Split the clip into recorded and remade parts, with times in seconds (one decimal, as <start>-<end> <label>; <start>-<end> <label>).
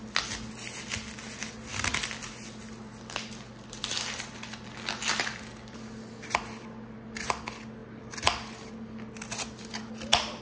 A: 0.0-10.4 recorded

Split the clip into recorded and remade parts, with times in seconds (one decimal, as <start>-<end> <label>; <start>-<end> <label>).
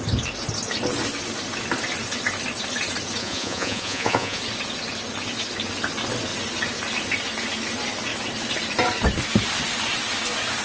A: 0.0-3.2 recorded; 3.2-4.4 remade; 4.4-10.6 recorded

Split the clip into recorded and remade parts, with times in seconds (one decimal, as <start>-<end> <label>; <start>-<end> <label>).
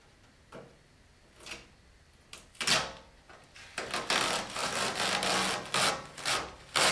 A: 0.0-6.9 recorded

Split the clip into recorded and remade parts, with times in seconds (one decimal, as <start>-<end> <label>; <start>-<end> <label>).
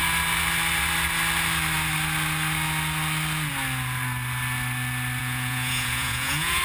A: 0.0-5.2 recorded; 5.2-6.6 remade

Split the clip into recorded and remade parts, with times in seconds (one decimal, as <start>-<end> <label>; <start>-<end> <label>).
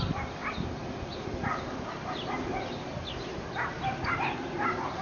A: 0.0-5.0 recorded